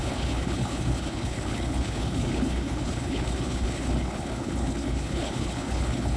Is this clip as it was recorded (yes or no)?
no